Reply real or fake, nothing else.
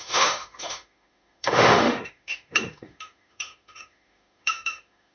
fake